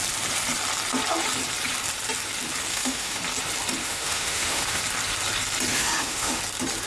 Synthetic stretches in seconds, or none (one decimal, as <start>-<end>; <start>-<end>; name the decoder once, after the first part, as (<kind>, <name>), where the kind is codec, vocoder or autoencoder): 2.7-3.2 (autoencoder, DAC-VAE); 3.8-4.8; 5.7-6.4